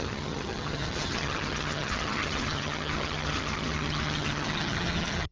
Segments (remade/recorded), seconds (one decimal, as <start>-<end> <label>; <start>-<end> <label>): 0.0-5.3 remade